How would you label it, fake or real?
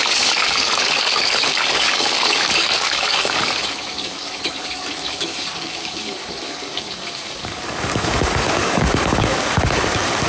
fake